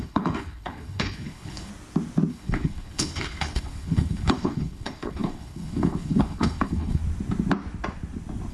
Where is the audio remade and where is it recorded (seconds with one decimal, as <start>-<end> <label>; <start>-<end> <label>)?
0.0-1.7 remade; 1.7-2.3 recorded; 2.3-7.0 remade; 7.0-8.5 recorded